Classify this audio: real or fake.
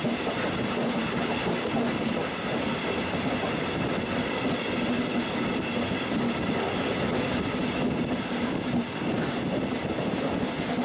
real